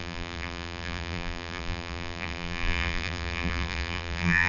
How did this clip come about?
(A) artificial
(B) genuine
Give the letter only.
A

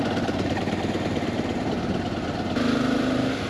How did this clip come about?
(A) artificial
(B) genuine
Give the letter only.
B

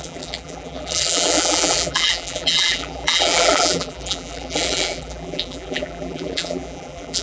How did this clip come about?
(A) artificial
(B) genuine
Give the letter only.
A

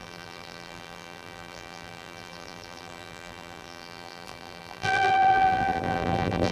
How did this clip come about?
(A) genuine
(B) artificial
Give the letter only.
B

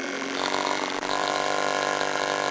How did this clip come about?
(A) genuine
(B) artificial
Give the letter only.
B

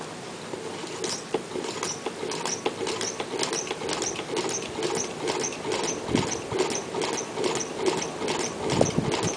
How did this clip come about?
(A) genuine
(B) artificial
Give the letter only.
A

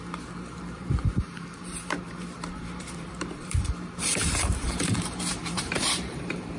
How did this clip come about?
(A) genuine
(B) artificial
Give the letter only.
B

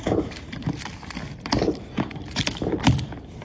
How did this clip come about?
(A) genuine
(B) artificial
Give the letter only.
B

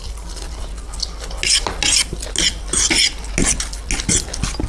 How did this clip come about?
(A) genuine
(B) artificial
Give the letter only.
A